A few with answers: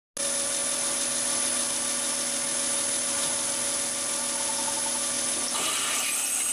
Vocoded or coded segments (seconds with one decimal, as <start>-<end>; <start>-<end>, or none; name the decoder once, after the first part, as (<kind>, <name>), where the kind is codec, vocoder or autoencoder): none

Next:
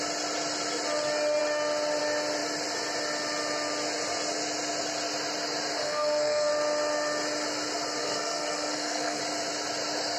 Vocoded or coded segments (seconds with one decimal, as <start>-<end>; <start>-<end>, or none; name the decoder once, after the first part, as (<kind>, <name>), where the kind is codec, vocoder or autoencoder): 5.8-6.5 (codec, SNAC); 8.0-9.2

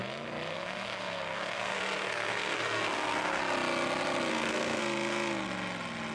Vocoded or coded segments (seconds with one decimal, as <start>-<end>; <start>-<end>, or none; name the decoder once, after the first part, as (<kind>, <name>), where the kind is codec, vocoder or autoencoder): 0.5-3.4 (codec, SNAC); 4.3-4.8

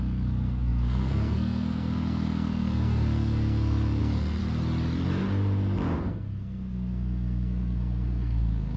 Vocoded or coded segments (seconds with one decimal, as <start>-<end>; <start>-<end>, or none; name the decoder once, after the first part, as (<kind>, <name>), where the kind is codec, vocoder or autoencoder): 0.0-4.4 (codec, SNAC); 6.0-8.8